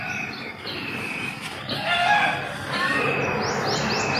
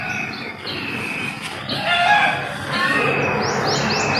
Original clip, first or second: second